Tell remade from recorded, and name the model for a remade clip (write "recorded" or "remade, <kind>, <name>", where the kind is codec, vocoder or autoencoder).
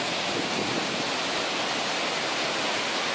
recorded